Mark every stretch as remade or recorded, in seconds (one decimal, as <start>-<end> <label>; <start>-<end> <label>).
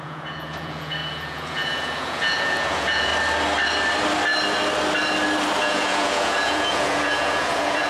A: 0.0-3.1 remade; 3.1-5.6 recorded; 5.6-7.9 remade